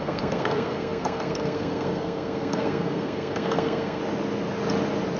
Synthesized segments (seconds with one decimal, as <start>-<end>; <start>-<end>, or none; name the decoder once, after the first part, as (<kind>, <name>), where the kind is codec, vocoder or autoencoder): 0.0-4.0 (codec, SNAC)